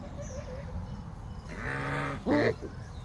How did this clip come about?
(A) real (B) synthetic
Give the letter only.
A